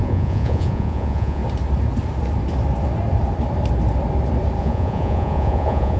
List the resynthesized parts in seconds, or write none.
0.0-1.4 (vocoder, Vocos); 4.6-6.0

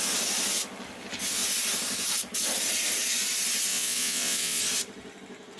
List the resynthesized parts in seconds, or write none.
3.7-4.6 (vocoder, Vocos)

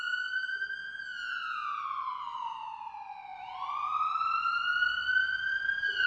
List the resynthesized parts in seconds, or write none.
0.8-1.8 (vocoder, Vocos)

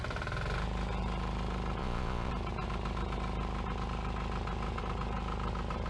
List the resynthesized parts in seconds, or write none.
1.8-2.3 (vocoder, Vocos)